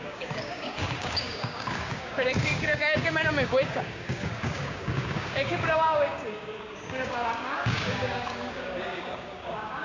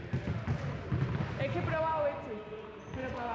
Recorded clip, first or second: second